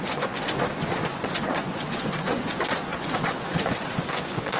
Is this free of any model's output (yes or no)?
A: no